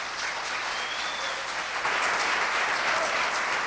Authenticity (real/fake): real